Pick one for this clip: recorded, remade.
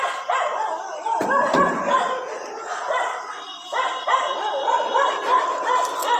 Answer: recorded